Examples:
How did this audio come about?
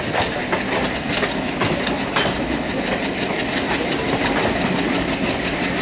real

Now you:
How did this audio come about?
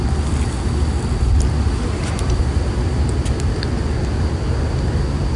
real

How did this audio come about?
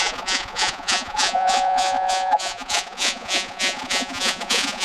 fake